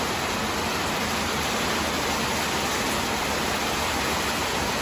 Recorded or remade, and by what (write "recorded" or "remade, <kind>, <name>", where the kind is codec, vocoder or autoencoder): recorded